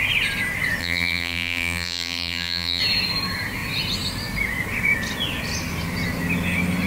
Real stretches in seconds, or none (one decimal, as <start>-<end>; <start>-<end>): 0.0-0.8; 2.8-6.9